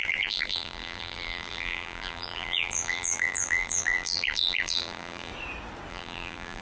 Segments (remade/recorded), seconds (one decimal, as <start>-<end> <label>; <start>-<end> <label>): 0.0-5.3 remade; 5.3-5.9 recorded; 5.9-6.6 remade